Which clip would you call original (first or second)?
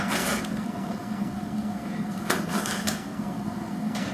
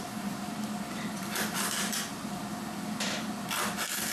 second